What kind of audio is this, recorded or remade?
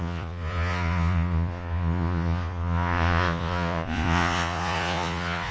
remade